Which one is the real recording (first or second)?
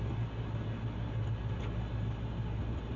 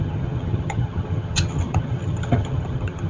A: first